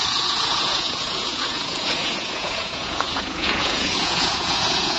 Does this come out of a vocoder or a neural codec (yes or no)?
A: yes